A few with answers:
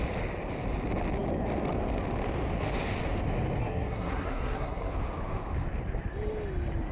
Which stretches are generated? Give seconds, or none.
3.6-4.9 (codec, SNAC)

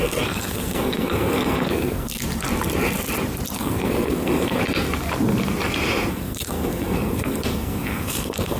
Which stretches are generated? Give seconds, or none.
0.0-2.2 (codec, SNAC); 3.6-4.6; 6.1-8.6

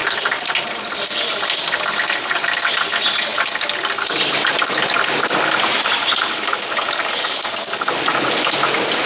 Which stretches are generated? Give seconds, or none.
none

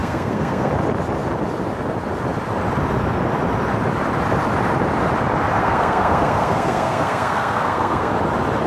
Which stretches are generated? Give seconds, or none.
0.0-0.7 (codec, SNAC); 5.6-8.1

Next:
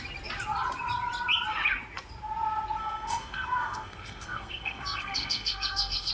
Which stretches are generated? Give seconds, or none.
2.8-6.1 (codec, SNAC)

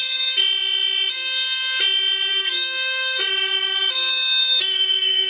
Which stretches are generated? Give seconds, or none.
0.0-0.4 (codec, SNAC); 2.3-3.2; 4.1-5.3

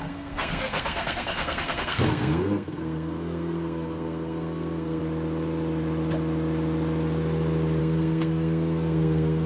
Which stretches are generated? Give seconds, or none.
0.0-5.0 (codec, SNAC); 7.8-9.5

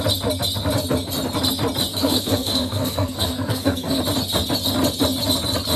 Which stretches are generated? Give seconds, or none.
1.9-4.0 (codec, SNAC)